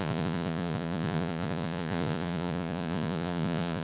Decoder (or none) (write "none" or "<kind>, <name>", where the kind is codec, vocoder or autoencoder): vocoder, Vocos